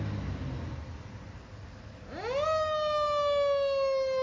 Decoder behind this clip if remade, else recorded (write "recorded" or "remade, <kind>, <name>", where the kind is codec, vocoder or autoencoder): recorded